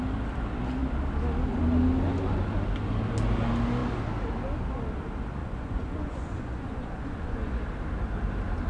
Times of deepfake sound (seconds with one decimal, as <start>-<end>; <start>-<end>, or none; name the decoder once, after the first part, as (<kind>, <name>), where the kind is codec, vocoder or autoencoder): 5.4-7.6 (vocoder, Vocos)